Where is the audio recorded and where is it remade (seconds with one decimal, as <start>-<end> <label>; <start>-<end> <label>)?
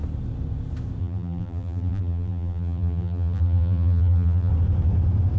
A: 0.0-1.0 recorded; 1.0-4.5 remade; 4.5-5.4 recorded